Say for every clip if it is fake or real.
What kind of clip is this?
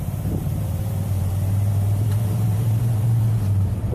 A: fake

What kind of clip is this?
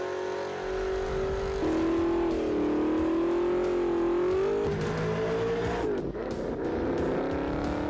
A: real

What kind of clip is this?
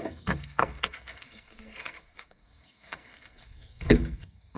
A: fake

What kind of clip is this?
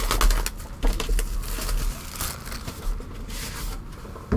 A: real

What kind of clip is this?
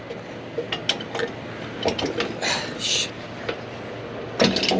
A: real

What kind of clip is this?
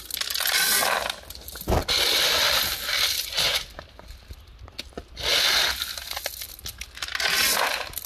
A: real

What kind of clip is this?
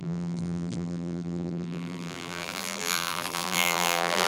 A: fake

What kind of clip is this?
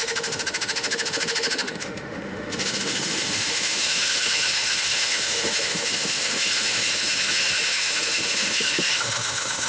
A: fake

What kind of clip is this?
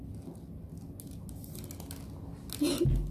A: real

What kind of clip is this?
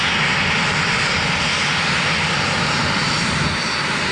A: real